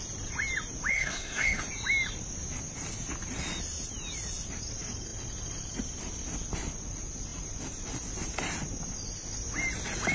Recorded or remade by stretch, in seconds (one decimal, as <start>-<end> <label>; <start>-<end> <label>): 0.0-0.9 recorded; 0.9-1.6 remade; 1.6-10.1 recorded